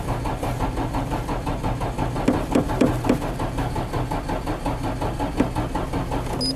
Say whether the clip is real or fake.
real